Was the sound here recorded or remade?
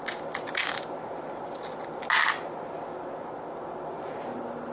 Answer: recorded